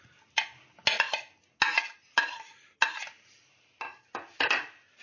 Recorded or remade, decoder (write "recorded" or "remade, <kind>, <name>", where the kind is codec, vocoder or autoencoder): recorded